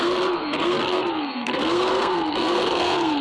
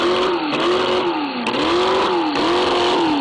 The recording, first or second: second